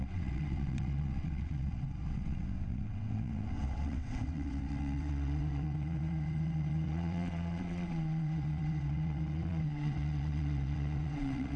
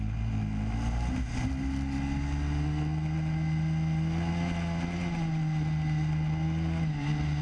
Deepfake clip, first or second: first